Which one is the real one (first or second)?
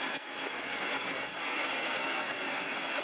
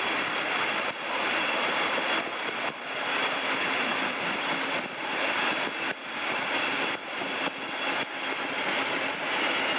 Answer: second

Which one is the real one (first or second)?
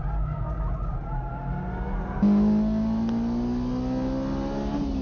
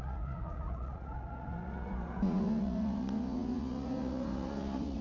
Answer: first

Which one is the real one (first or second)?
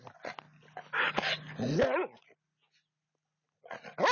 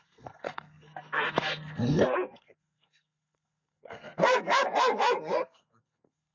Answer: first